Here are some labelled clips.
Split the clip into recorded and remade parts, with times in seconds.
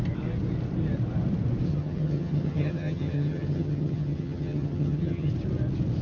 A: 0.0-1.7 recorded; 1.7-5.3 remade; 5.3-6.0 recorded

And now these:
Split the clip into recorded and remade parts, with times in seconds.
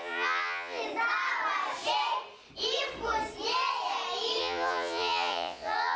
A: 0.0-0.8 remade; 0.8-4.4 recorded; 4.4-6.0 remade